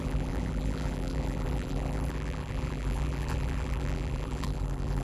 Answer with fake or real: fake